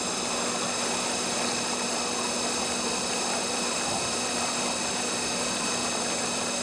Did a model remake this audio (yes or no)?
no